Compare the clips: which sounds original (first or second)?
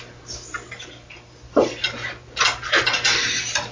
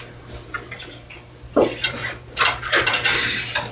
first